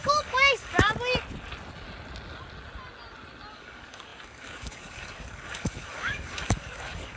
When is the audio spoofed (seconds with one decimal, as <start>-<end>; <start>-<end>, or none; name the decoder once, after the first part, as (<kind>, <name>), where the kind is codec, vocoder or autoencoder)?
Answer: 0.0-0.9 (codec, DAC); 3.5-7.2